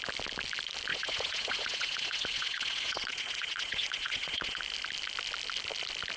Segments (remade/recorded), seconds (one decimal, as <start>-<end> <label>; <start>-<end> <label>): 0.0-0.9 recorded; 0.9-4.6 remade; 4.6-6.2 recorded

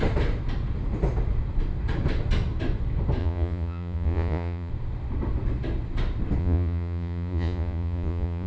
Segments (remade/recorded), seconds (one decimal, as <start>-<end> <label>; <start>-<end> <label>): 0.0-3.2 recorded; 3.2-4.7 remade; 4.7-6.4 recorded; 6.4-8.5 remade